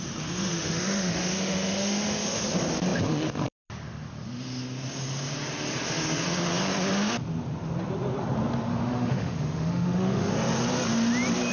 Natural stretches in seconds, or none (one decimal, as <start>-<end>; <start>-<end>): 0.0-0.5; 2.4-8.7; 10.3-11.5